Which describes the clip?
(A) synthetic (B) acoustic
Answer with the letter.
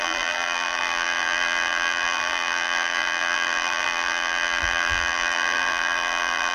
A